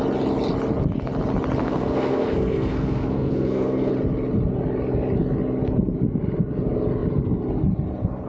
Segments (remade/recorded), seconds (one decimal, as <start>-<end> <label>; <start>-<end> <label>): 0.0-1.6 recorded; 1.6-3.9 remade; 3.9-8.3 recorded